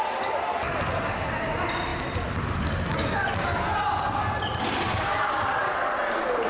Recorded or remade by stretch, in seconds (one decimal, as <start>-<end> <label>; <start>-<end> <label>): 0.0-6.5 recorded